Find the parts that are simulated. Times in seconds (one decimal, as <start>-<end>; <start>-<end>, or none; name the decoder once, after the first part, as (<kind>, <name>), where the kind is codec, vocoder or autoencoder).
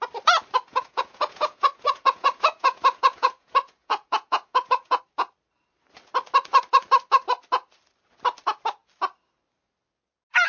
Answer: 0.7-5.0 (vocoder, Vocos)